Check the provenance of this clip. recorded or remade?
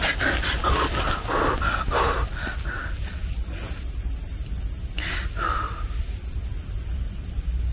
recorded